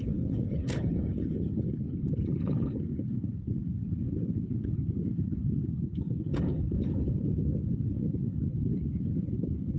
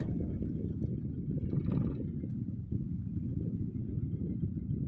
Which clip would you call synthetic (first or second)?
first